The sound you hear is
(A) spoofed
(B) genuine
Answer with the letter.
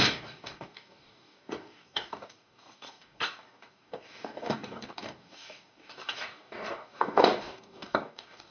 A